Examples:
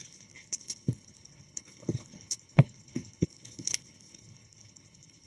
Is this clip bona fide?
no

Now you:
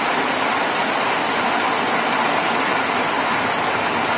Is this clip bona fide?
yes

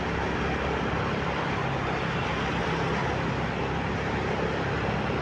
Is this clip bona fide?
yes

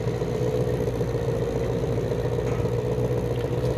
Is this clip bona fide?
yes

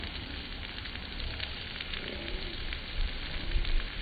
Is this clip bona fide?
no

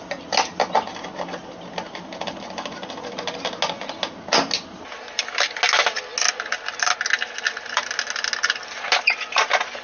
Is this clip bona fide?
yes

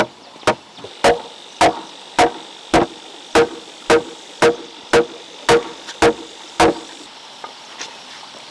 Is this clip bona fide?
yes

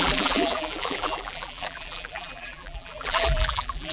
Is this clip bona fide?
no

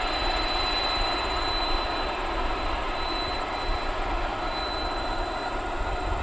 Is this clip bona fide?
no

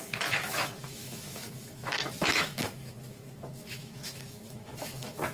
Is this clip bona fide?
no